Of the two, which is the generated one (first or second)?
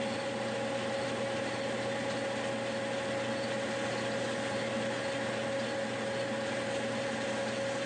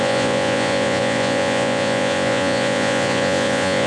second